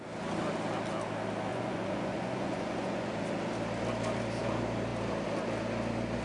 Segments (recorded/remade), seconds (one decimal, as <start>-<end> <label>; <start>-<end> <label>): 0.0-1.5 recorded; 1.5-3.1 remade; 3.1-6.2 recorded